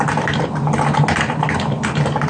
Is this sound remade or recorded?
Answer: recorded